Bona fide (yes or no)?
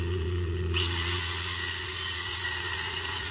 no